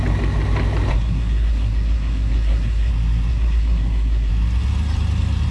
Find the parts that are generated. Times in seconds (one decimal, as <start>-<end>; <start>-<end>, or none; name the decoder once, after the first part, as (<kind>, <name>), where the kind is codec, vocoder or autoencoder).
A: 0.9-2.9 (codec, SNAC); 3.3-4.3